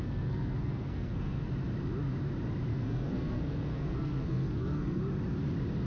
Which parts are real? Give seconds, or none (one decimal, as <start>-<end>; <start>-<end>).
1.5-2.7; 5.0-5.9